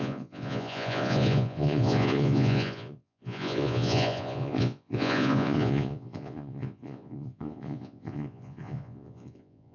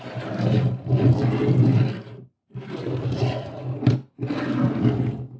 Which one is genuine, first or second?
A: second